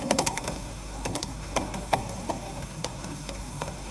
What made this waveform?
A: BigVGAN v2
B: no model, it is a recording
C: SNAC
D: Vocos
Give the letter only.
C